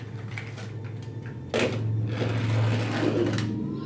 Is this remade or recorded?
recorded